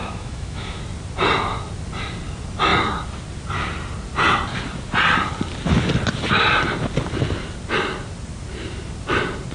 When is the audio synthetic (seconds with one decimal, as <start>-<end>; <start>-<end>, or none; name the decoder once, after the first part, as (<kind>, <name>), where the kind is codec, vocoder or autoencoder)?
0.0-0.8 (autoencoder, DAC-VAE)